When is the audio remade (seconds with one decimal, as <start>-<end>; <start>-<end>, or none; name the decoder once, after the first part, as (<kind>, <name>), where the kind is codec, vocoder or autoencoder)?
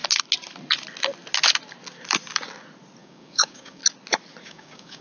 3.0-3.8 (codec, DAC); 4.4-5.0